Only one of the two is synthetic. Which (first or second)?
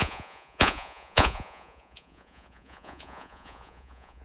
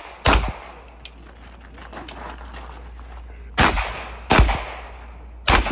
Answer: first